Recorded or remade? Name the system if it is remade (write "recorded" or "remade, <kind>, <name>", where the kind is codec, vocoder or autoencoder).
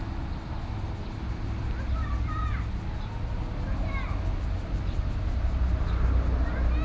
recorded